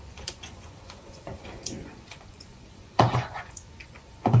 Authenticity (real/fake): fake